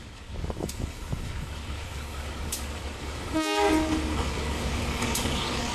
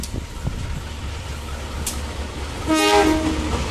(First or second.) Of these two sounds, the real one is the second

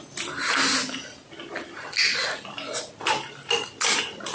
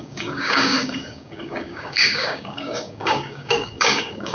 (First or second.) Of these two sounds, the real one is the first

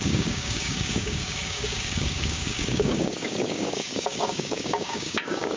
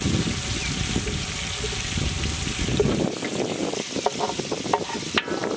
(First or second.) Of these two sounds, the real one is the second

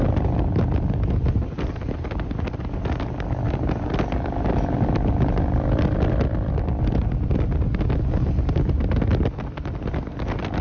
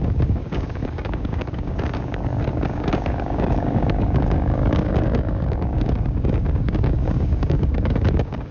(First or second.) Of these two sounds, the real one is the first